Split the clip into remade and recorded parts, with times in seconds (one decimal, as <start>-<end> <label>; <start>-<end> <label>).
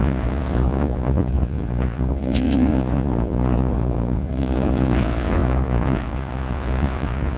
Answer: 0.0-7.4 remade